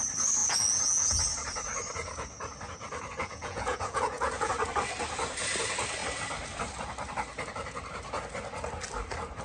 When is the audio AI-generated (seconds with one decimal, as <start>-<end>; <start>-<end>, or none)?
0.4-1.2; 3.2-4.5